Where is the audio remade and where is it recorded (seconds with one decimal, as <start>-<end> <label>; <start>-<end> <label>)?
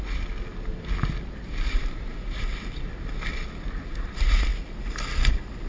0.0-5.7 recorded